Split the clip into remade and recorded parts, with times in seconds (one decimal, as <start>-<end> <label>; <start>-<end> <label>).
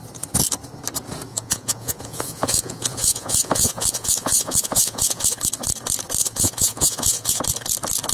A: 0.0-1.3 recorded; 1.3-5.4 remade; 5.4-6.2 recorded; 6.2-7.4 remade; 7.4-8.1 recorded